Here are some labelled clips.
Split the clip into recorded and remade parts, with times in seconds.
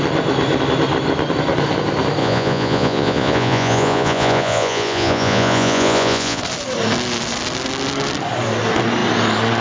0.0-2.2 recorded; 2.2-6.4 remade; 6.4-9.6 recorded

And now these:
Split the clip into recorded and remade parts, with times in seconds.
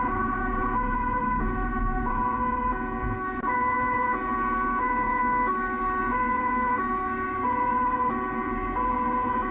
0.0-5.2 remade; 5.2-6.0 recorded; 6.0-9.5 remade